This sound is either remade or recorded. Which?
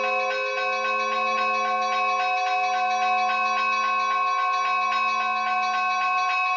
recorded